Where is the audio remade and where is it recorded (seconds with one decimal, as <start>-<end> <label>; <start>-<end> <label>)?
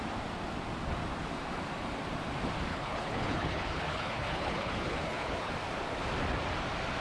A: 0.0-2.7 recorded; 2.7-5.5 remade; 5.5-7.0 recorded